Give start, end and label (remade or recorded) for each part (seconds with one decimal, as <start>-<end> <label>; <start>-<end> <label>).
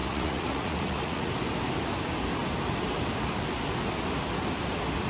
0.0-1.3 remade; 1.3-5.1 recorded